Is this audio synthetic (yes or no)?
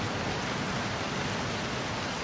no